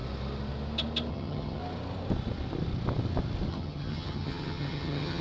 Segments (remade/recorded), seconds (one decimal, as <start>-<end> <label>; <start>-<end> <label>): 0.0-1.1 recorded; 1.1-1.6 remade; 1.6-3.5 recorded; 3.5-5.2 remade